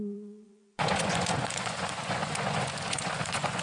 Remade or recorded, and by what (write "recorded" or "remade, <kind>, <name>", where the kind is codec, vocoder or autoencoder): remade, vocoder, Vocos